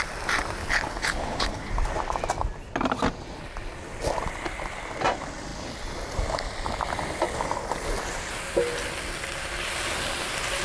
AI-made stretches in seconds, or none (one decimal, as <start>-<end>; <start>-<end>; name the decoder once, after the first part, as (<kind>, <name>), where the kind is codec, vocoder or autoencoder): 0.6-1.7 (codec, HILCodec)